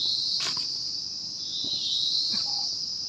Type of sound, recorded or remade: recorded